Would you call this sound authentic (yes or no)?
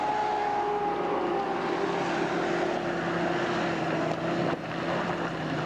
yes